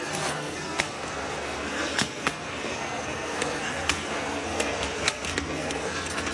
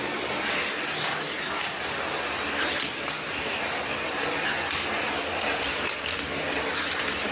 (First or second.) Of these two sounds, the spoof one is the first